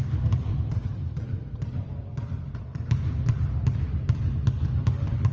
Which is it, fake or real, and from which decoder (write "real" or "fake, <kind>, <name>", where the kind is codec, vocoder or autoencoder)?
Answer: real